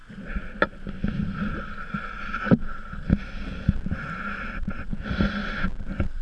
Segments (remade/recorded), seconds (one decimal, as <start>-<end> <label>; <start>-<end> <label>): 0.0-6.2 recorded